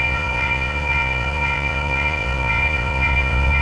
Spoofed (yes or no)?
yes